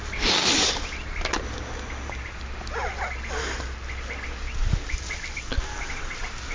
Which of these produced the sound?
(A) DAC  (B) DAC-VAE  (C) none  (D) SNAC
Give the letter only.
C